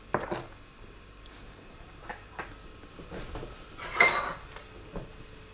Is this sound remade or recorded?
recorded